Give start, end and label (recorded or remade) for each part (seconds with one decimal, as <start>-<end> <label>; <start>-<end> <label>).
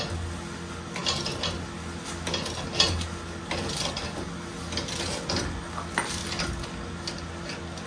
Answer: 0.0-7.9 recorded